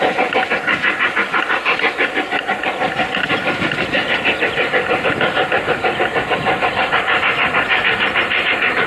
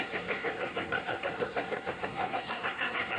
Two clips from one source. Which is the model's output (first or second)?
second